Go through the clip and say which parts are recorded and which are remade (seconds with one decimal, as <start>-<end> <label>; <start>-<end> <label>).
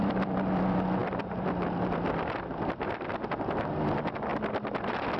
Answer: 0.0-5.2 remade